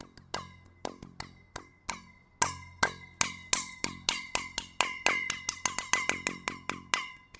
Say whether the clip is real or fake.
real